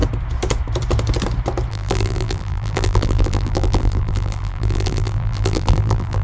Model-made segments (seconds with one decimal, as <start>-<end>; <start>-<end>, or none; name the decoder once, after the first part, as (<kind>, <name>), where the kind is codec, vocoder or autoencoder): 1.7-6.2 (vocoder, BigVGAN v2)